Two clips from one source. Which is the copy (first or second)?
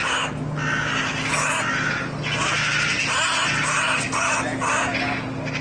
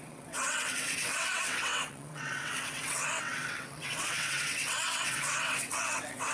second